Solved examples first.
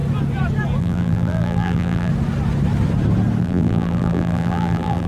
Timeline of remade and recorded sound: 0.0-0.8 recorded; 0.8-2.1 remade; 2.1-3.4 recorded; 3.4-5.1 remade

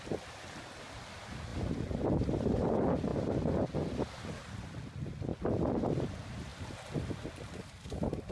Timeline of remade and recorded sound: 0.0-8.3 recorded

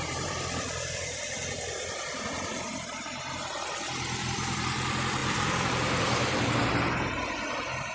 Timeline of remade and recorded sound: 0.0-5.2 recorded; 5.2-6.7 remade; 6.7-7.9 recorded

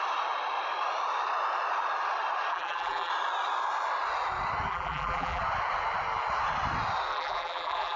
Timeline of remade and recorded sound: 0.0-2.5 recorded; 2.5-3.1 remade; 3.1-4.7 recorded; 4.7-5.4 remade; 5.4-7.1 recorded; 7.1-8.0 remade

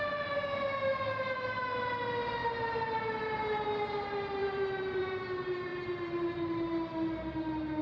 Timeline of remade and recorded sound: 0.0-2.4 recorded; 2.4-3.6 remade; 3.6-4.4 recorded; 4.4-5.0 remade; 5.0-5.7 recorded; 5.7-7.8 remade

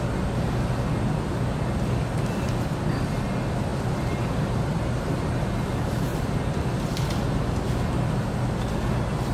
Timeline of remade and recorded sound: 0.0-3.7 recorded; 3.7-5.0 remade; 5.0-6.1 recorded; 6.1-7.0 remade; 7.0-9.3 recorded

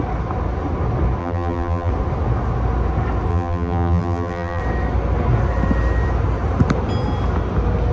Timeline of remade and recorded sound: 0.0-1.2 recorded; 1.2-1.9 remade; 1.9-3.3 recorded; 3.3-4.6 remade; 4.6-7.9 recorded

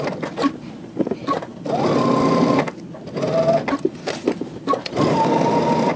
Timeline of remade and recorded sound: 0.0-6.0 recorded